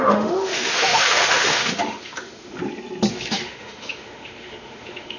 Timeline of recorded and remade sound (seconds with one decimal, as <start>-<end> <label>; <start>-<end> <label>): 0.0-2.6 remade; 2.6-3.1 recorded; 3.1-5.2 remade